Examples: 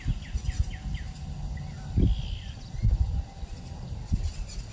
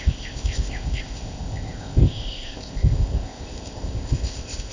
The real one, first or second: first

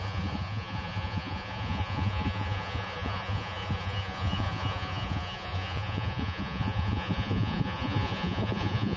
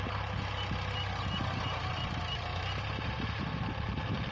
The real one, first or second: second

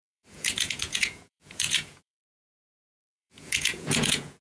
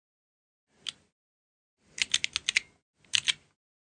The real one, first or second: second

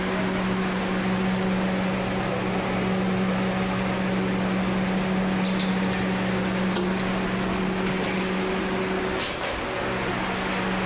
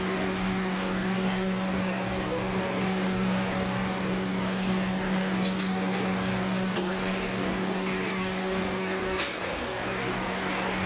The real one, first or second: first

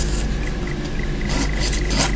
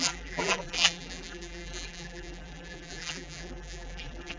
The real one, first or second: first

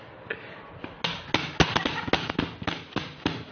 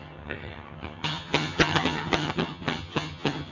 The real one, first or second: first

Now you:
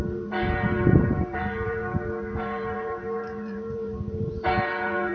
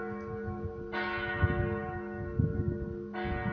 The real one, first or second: second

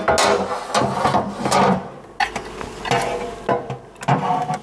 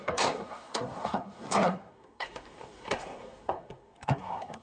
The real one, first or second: first